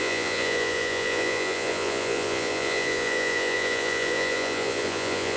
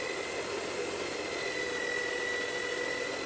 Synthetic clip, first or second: first